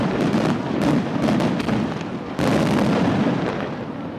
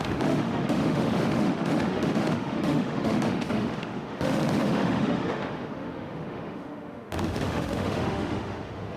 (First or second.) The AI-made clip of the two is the second